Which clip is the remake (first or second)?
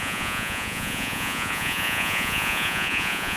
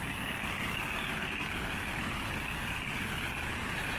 first